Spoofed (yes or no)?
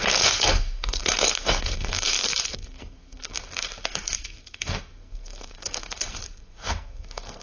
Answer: yes